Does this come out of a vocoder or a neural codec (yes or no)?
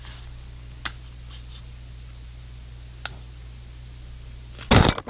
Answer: no